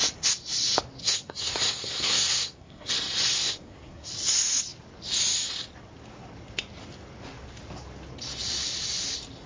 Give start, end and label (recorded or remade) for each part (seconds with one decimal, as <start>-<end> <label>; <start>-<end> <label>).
0.0-1.0 recorded; 1.0-2.9 remade; 2.9-3.3 recorded; 3.3-4.1 remade; 4.1-9.5 recorded